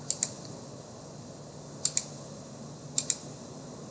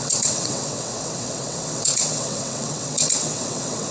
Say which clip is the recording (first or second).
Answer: first